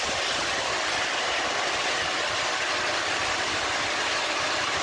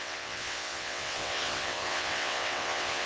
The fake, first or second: second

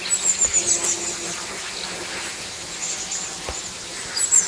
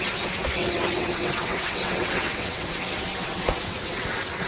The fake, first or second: second